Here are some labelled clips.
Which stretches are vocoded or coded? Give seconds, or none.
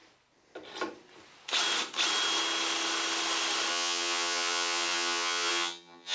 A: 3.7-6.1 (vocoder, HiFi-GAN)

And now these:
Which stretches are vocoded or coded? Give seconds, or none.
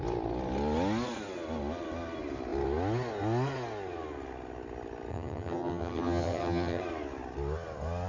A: 5.1-6.8 (vocoder, HiFi-GAN)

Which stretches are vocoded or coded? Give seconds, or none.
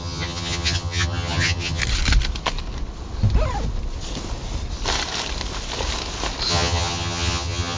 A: 0.0-1.8 (vocoder, HiFi-GAN); 6.5-7.8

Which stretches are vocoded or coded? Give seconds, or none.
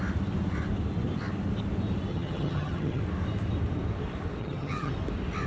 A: 2.1-3.0 (vocoder, HiFi-GAN); 4.4-4.9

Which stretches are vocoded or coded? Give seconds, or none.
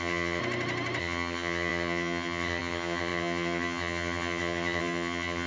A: 0.0-0.4 (vocoder, HiFi-GAN); 1.0-5.5